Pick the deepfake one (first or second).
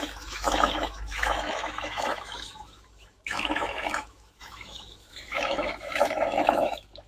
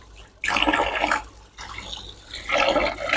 first